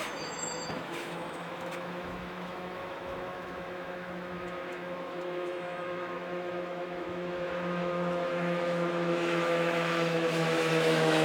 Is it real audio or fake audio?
fake